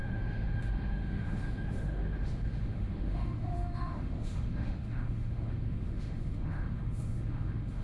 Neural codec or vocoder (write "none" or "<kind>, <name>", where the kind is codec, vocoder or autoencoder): autoencoder, DAC-VAE